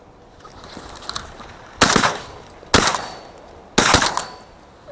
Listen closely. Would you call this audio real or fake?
real